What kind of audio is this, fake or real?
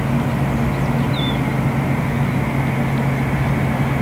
real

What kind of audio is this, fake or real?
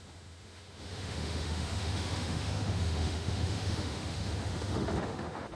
fake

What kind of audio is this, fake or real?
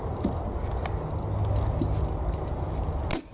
real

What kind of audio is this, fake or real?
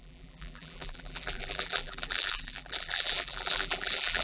fake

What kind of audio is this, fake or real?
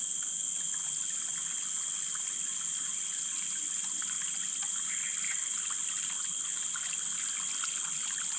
real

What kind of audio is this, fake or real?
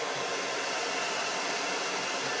real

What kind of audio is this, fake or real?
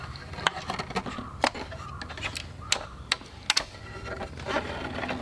real